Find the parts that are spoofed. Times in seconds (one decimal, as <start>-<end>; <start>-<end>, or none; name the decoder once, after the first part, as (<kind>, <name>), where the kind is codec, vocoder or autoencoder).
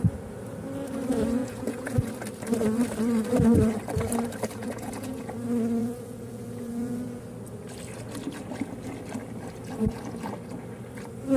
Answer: 1.4-2.1 (vocoder, Vocos); 4.6-5.3; 5.8-7.2